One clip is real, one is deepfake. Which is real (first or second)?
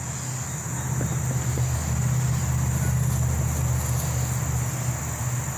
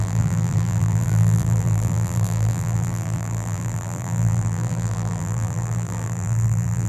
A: first